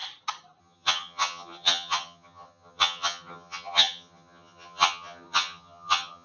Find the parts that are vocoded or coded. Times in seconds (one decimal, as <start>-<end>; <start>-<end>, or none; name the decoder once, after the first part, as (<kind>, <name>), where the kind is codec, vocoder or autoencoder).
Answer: 0.6-6.2 (vocoder, HiFi-GAN)